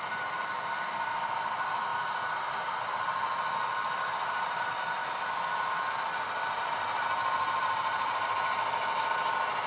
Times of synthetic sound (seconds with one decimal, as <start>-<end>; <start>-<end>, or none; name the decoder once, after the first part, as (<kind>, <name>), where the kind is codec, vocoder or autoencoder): 0.0-9.7 (vocoder, BigVGAN v2)